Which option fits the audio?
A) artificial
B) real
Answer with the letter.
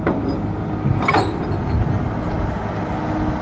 B